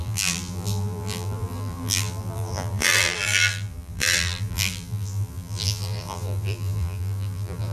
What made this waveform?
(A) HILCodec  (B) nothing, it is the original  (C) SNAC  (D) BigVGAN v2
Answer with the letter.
D